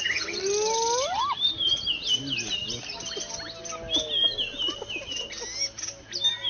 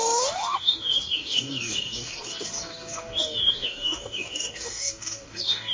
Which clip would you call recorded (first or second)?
first